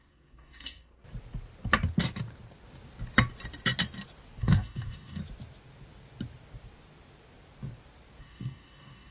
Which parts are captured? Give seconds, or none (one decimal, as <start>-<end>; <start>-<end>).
0.9-4.4; 5.2-8.2